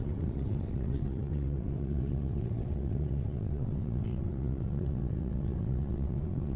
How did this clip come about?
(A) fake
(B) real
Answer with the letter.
A